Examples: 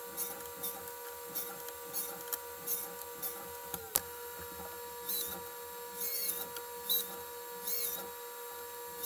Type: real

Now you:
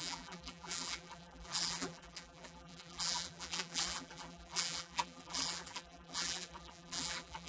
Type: fake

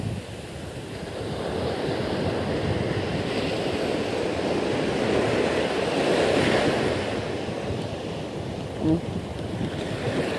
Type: real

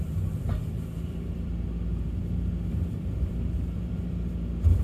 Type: fake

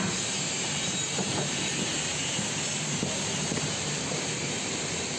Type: fake